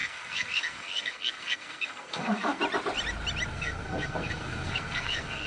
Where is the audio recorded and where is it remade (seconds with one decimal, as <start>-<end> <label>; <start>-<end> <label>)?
0.0-2.6 remade; 2.6-3.5 recorded; 3.5-5.5 remade